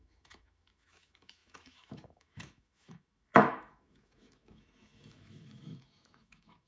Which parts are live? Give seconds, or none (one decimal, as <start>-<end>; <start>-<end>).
none